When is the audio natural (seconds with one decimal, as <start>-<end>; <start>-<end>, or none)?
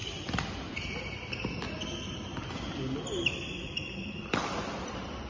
0.0-3.2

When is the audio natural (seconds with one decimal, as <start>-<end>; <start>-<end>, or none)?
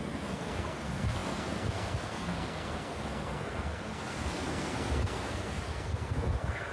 none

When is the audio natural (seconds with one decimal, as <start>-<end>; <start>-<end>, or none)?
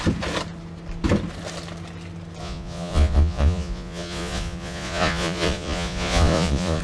0.0-2.4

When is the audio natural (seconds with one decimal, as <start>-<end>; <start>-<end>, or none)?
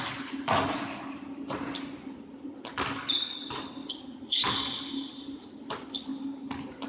6.1-6.9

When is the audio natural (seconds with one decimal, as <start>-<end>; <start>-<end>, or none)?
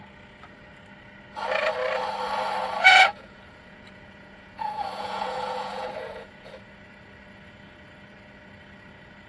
0.0-2.6; 6.5-9.3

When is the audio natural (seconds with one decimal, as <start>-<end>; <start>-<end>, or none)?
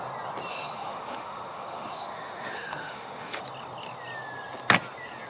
0.0-0.5; 3.4-5.3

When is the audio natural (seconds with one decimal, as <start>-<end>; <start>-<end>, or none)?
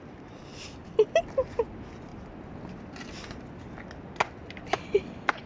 0.0-5.5